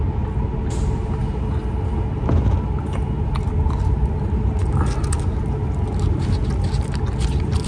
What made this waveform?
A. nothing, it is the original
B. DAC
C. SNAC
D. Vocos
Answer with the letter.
A